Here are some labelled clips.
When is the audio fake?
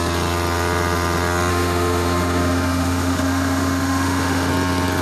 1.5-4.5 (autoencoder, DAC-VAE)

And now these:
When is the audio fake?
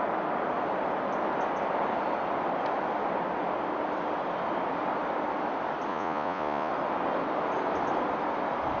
5.9-6.7 (vocoder, Vocos)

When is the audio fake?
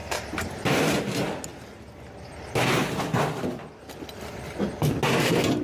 0.0-1.0 (vocoder, BigVGAN v2)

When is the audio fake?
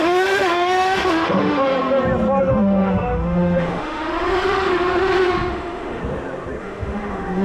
0.0-1.7 (autoencoder, DAC-VAE); 2.4-6.0; 6.6-7.4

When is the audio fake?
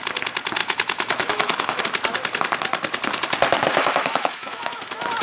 0.6-1.8 (autoencoder, DAC-VAE); 3.7-4.8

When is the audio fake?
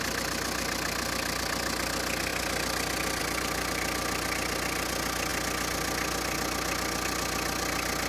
none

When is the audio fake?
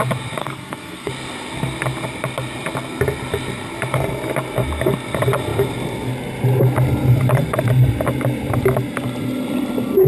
0.4-1.1 (codec, SNAC)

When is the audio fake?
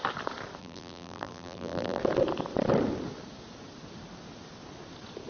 0.6-2.0 (vocoder, BigVGAN v2)